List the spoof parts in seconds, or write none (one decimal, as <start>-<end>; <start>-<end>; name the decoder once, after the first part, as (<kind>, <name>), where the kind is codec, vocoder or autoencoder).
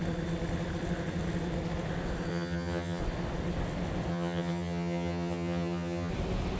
2.3-3.0 (vocoder, HiFi-GAN); 4.1-6.1